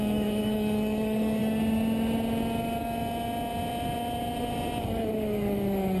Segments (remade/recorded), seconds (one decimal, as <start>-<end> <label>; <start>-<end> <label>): 0.0-1.4 remade; 1.4-4.8 recorded; 4.8-6.0 remade